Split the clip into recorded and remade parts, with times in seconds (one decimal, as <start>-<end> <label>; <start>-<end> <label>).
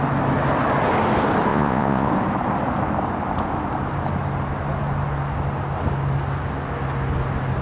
0.0-1.5 recorded; 1.5-2.1 remade; 2.1-7.6 recorded